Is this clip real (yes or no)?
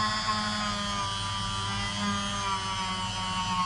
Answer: yes